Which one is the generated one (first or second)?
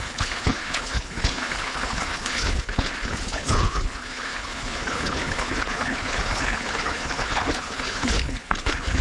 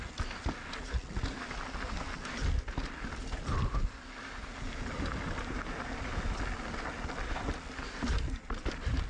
first